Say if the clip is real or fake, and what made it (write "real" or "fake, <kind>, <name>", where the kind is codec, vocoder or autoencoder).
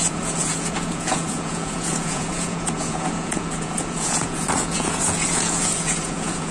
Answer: fake, vocoder, Vocos